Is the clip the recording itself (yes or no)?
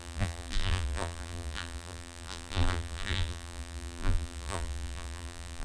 no